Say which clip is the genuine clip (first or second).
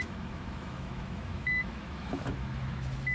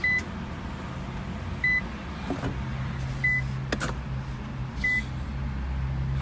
second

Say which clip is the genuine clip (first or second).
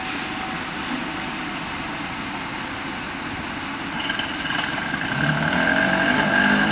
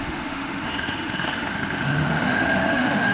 first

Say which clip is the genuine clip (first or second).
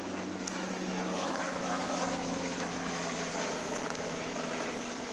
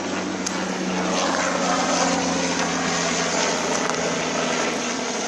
second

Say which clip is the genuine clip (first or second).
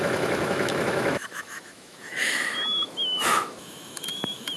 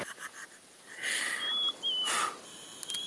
second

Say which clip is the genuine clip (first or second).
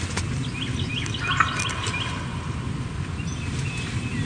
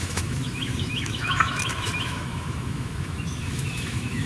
first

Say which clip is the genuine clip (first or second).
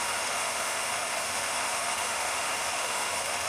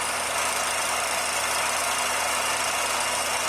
second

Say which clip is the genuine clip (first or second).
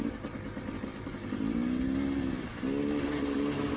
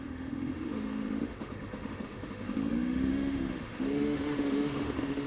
first